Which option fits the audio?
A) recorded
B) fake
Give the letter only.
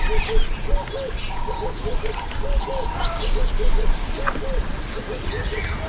A